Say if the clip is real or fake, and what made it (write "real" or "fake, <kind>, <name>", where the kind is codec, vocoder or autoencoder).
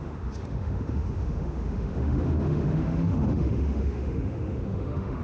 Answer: fake, autoencoder, DAC-VAE